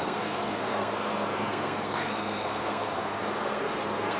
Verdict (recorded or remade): remade